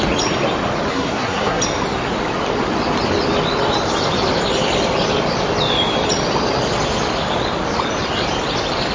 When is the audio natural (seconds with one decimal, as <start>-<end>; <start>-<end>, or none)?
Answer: 0.0-0.9; 1.6-8.9